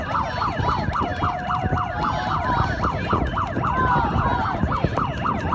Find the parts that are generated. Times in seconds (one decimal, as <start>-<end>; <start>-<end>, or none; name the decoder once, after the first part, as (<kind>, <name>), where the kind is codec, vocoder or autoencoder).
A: none